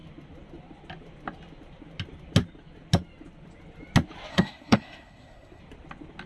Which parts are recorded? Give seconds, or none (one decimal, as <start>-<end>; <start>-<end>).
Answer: 0.0-4.3; 5.6-6.3